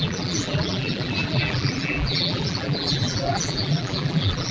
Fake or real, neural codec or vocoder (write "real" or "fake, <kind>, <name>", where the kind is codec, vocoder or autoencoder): fake, vocoder, BigVGAN v2